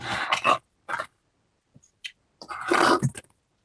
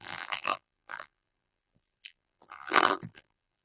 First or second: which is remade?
second